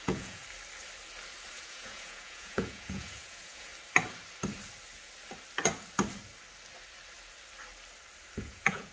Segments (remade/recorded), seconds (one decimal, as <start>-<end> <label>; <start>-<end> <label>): 0.0-0.4 remade; 0.4-1.5 recorded; 1.5-3.7 remade; 3.7-8.4 recorded; 8.4-8.9 remade